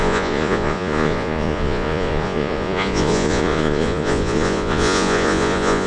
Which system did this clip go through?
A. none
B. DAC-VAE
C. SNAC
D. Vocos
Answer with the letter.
D